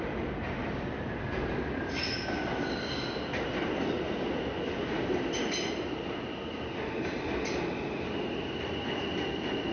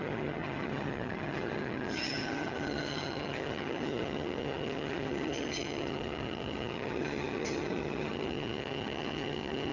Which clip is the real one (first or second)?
first